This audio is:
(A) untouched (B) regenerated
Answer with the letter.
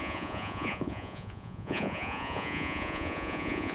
B